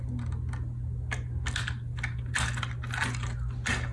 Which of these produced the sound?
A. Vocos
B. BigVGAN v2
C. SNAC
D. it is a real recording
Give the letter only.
D